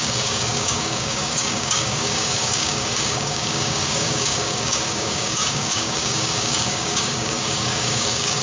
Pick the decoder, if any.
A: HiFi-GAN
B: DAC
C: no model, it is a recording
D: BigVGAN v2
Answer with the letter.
B